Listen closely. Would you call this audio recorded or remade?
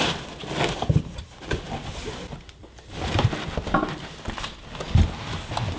recorded